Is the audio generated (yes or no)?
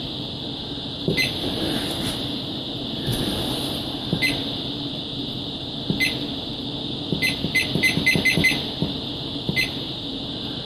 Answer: no